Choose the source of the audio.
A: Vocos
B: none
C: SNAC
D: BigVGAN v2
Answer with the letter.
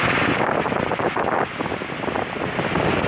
B